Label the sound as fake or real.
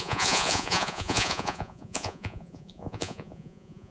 fake